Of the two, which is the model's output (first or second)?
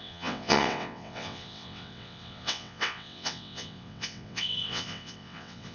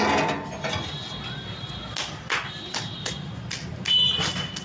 first